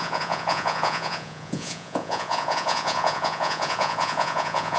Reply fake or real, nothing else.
fake